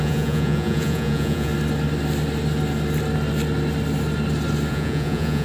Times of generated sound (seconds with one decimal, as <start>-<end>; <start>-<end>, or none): 0.0-1.5; 4.7-5.4